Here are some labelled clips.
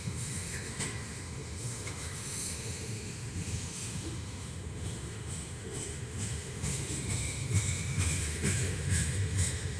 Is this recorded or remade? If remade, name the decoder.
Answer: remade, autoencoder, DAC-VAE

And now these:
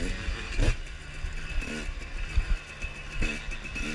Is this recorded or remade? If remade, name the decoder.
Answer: recorded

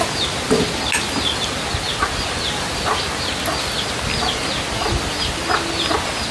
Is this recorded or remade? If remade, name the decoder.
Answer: recorded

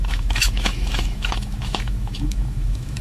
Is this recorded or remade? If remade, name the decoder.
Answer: remade, autoencoder, DAC-VAE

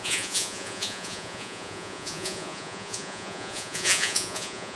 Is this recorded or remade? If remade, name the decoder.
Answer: remade, vocoder, Vocos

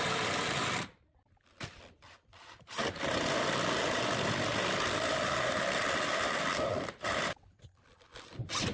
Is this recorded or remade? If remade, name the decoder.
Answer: recorded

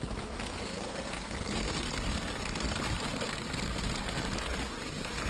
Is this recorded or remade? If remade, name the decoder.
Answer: recorded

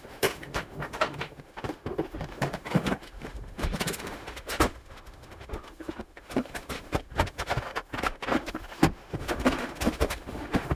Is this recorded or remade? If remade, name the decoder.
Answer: remade, autoencoder, DAC-VAE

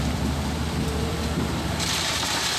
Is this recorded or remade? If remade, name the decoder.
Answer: remade, vocoder, BigVGAN v2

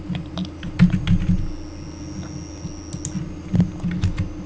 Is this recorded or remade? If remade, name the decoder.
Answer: recorded